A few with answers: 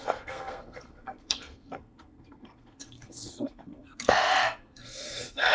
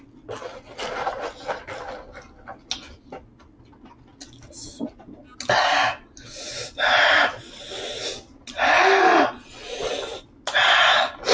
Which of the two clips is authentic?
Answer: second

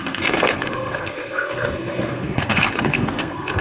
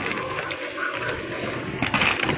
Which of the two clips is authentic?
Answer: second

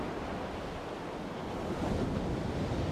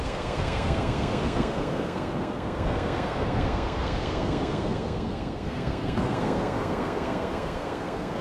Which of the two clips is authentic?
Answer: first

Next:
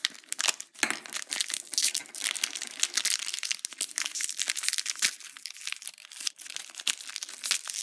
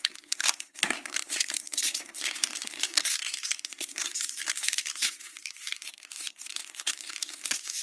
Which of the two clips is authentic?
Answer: first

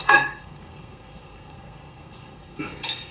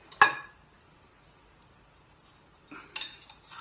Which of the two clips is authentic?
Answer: second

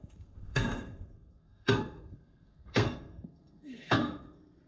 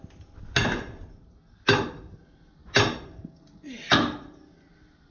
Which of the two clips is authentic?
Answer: second